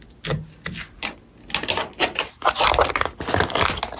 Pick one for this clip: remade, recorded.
recorded